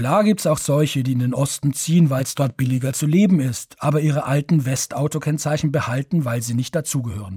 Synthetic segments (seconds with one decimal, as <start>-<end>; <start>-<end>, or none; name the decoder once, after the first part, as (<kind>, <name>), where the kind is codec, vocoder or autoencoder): 2.2-3.0 (codec, SNAC)